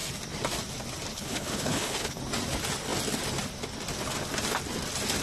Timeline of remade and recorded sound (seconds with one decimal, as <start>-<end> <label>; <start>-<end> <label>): 0.0-1.1 recorded; 1.1-2.2 remade; 2.2-5.2 recorded